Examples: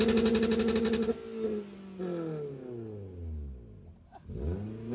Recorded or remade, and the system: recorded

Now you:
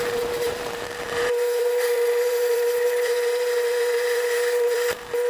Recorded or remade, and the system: remade, vocoder, BigVGAN v2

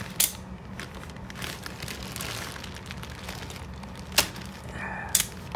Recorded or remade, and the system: recorded